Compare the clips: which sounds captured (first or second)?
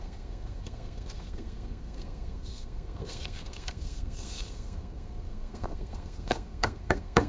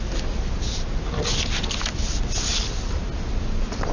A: second